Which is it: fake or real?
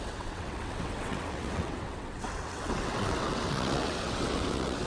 fake